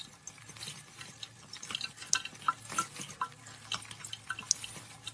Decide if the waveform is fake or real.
real